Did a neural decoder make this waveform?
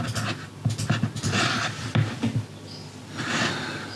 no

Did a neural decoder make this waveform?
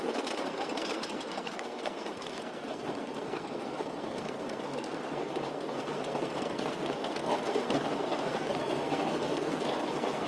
yes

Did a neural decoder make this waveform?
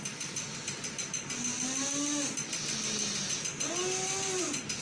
no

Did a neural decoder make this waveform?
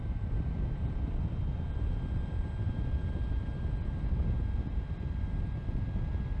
no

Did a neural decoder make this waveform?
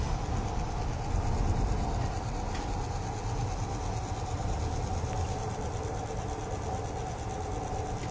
no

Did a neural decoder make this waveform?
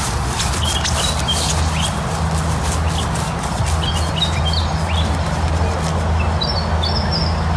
no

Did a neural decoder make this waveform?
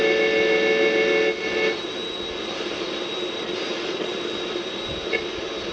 no